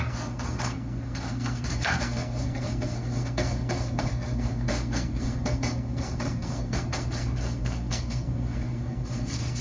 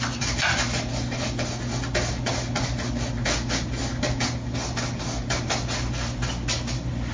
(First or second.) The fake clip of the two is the first